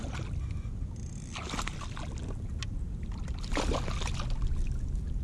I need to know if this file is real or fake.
real